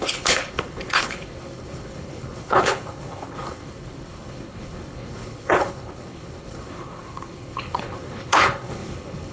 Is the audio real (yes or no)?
no